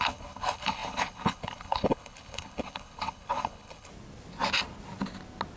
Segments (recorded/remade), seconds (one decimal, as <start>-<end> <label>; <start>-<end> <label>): 0.0-3.9 remade; 3.9-5.6 recorded